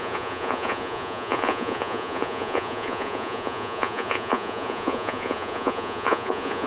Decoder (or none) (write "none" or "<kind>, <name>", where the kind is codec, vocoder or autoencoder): vocoder, Vocos